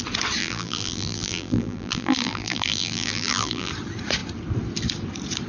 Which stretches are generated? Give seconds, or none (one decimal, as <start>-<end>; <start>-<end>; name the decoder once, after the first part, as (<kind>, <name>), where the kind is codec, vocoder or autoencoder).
0.4-3.7 (vocoder, BigVGAN v2)